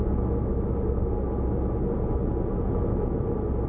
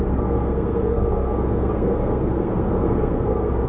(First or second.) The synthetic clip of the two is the second